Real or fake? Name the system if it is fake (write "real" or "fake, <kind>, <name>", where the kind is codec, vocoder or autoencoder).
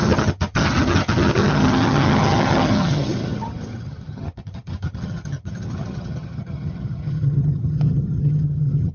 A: fake, vocoder, HiFi-GAN